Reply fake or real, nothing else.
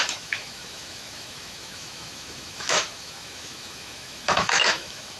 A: fake